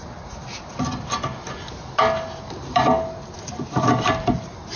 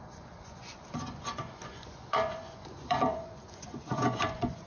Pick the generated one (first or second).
second